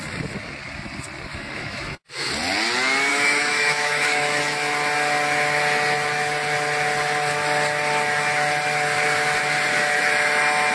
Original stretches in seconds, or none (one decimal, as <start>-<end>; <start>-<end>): 0.0-1.3; 2.3-3.1; 4.4-10.7